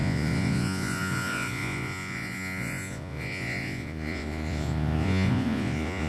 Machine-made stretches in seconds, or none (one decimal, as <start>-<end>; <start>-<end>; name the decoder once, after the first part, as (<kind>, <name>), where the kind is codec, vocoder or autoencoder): 0.0-6.1 (vocoder, Vocos)